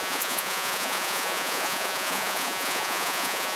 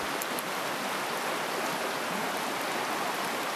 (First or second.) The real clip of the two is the second